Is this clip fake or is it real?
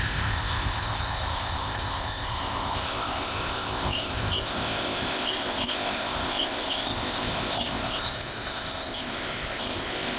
fake